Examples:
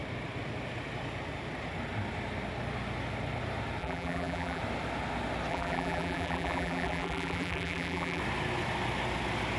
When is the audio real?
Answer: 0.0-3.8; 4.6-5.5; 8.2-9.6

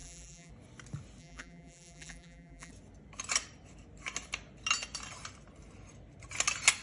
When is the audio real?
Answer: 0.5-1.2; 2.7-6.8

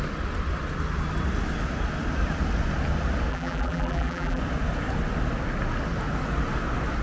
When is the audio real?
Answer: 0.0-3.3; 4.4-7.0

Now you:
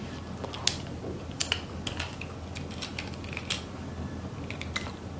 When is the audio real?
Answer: 0.0-5.2

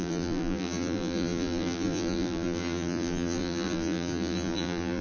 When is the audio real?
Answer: none